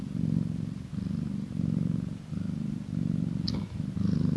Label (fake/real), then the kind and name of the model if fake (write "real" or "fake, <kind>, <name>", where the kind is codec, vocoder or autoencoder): real